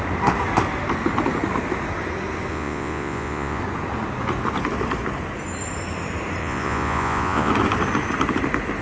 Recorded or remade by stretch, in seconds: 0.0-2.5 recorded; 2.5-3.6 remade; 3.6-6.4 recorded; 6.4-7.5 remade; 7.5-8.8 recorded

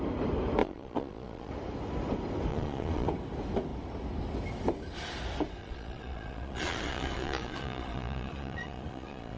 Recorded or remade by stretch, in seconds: 0.0-0.6 recorded; 0.6-1.5 remade; 1.5-2.5 recorded; 2.5-3.1 remade; 3.1-5.6 recorded; 5.6-9.4 remade

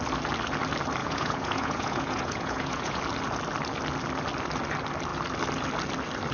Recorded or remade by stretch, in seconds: 0.0-1.0 recorded; 1.0-3.0 remade; 3.0-6.3 recorded